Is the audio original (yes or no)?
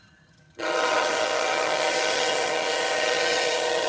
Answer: no